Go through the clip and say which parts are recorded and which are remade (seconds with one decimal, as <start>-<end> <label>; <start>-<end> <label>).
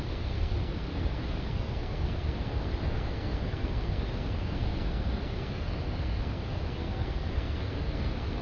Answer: 0.0-8.4 remade